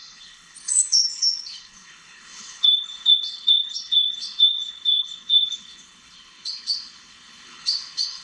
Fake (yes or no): yes